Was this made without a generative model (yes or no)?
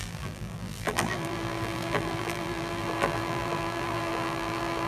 no